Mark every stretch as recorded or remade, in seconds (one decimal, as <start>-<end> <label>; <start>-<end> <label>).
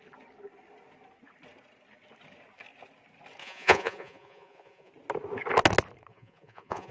0.0-3.4 recorded; 3.4-4.9 remade; 4.9-6.1 recorded; 6.1-6.9 remade